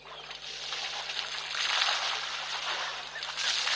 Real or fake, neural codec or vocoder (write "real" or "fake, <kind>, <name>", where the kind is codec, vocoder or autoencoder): real